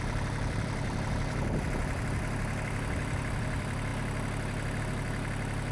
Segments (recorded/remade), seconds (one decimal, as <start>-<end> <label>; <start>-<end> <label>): 0.0-3.9 remade; 3.9-4.8 recorded; 4.8-5.7 remade